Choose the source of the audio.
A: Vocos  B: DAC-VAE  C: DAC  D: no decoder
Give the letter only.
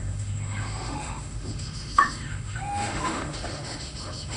B